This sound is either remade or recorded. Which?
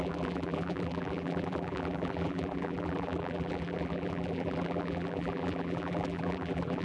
remade